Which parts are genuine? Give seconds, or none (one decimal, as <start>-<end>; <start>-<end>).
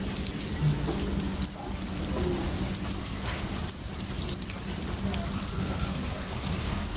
0.0-3.0; 3.5-5.4